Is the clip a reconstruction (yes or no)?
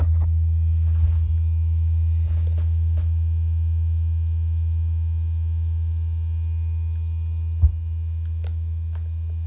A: no